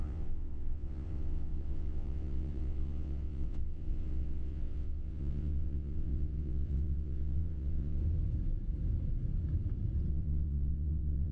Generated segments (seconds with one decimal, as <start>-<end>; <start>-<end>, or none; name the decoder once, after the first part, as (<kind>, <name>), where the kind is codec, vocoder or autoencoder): 0.0-8.0 (vocoder, WaveNeXt); 10.1-11.3